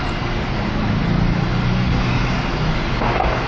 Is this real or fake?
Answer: real